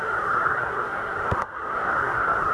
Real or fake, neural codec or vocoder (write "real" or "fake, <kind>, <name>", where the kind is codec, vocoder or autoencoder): fake, codec, SNAC